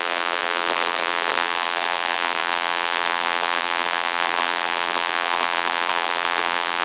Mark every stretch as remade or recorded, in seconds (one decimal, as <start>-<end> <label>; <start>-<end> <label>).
0.0-6.8 remade